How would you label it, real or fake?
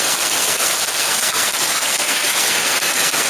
fake